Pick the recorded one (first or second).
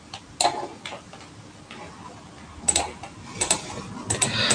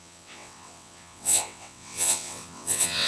first